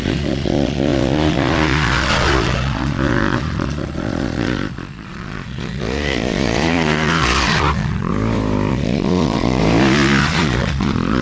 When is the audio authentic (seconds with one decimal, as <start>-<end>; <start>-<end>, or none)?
8.1-8.7; 9.6-10.2